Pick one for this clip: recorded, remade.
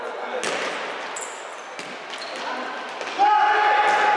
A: recorded